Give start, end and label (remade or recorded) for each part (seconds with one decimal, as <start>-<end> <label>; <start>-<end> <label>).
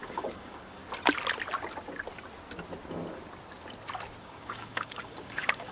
0.0-0.8 remade; 0.8-4.2 recorded; 4.2-5.7 remade